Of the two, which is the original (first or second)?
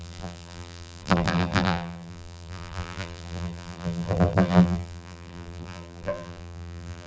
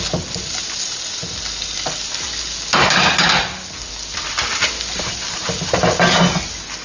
second